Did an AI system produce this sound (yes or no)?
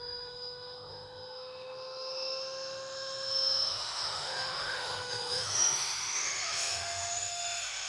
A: yes